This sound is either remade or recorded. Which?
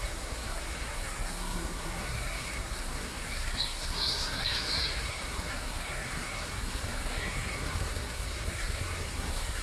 remade